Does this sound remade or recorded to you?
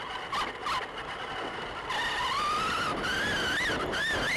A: recorded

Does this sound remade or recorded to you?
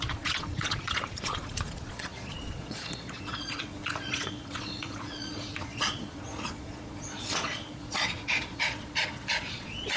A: remade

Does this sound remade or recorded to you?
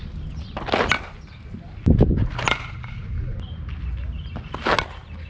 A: recorded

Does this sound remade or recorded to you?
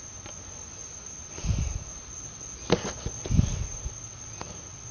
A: recorded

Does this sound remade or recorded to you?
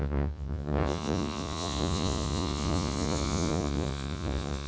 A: remade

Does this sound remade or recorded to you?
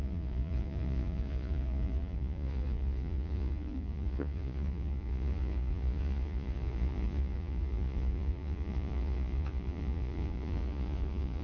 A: remade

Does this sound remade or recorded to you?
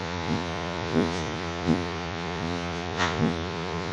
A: remade